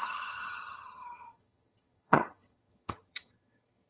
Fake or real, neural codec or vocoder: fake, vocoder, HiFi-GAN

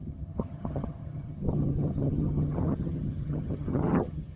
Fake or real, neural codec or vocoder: fake, vocoder, HiFi-GAN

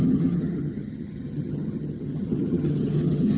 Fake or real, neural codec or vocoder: fake, vocoder, HiFi-GAN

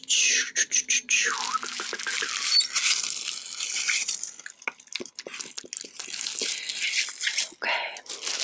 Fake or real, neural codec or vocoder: real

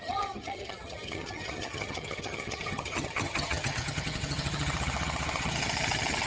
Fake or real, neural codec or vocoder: fake, vocoder, HiFi-GAN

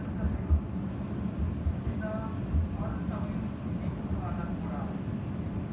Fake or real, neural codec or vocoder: real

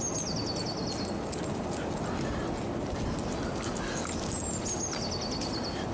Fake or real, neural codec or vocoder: real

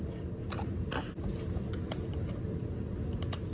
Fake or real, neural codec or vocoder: real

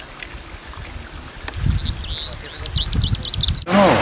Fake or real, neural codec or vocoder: real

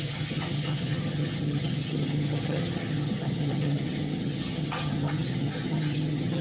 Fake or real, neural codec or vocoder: fake, vocoder, HiFi-GAN